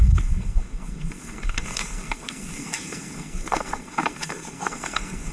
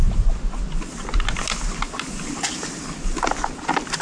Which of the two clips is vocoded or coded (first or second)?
first